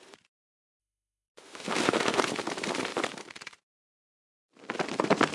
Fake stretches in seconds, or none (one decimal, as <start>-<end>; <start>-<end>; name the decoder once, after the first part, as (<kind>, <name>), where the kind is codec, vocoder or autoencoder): 0.8-2.2 (autoencoder, DAC-VAE)